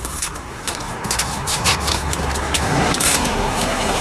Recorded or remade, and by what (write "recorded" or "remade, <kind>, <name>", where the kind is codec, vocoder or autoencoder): remade, codec, SNAC